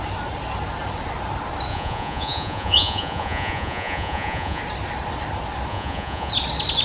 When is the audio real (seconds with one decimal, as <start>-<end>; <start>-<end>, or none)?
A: 0.0-1.7; 4.6-5.7; 6.3-6.8